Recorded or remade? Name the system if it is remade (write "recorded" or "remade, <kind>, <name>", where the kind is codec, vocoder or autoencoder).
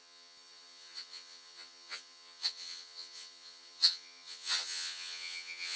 remade, vocoder, HiFi-GAN